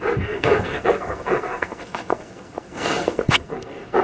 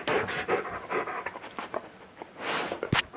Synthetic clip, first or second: first